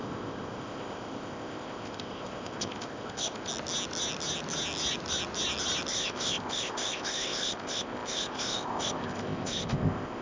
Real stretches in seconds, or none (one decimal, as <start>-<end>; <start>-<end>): 3.5-5.9